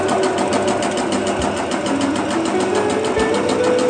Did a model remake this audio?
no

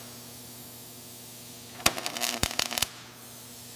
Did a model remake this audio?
no